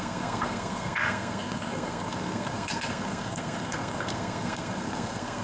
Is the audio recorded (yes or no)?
no